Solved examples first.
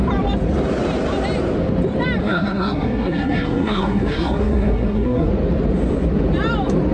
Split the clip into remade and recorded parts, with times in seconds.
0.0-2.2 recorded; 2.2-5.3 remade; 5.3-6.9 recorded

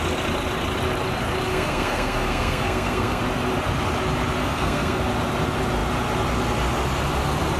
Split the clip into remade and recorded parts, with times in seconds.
0.0-1.5 recorded; 1.5-3.2 remade; 3.2-4.4 recorded; 4.4-5.0 remade; 5.0-7.6 recorded